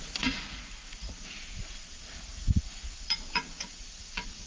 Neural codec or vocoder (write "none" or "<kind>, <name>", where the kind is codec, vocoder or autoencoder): vocoder, Vocos